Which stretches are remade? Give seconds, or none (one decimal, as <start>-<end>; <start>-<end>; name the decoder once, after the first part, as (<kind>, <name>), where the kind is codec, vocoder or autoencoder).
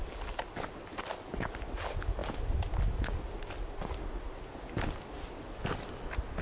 none